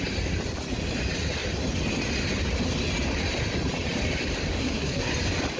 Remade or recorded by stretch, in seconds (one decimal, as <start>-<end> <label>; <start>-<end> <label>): 0.0-4.6 recorded; 4.6-5.1 remade; 5.1-5.6 recorded